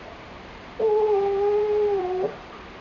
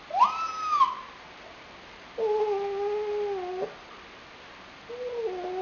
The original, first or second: second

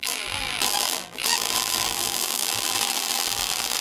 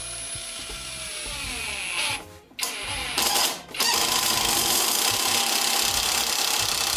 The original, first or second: second